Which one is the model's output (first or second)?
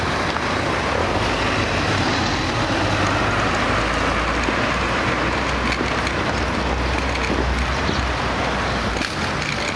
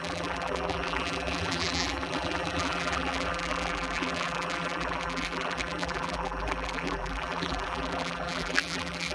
second